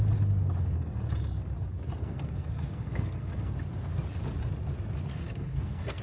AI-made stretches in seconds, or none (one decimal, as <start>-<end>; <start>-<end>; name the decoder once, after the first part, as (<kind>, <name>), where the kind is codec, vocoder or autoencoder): 2.0-3.5 (codec, SNAC); 5.1-6.0